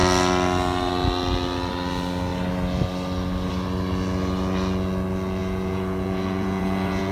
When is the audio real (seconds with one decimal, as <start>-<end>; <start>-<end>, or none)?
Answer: 0.0-5.4